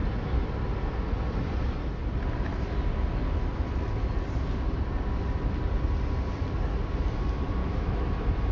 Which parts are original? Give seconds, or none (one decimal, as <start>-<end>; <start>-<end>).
0.0-7.6; 8.1-8.5